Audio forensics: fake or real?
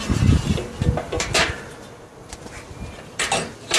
real